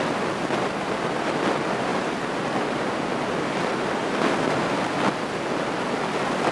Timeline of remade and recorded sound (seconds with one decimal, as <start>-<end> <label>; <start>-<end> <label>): 0.0-6.5 recorded